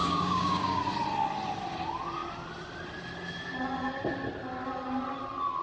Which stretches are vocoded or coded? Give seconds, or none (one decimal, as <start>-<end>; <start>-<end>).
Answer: 0.0-0.8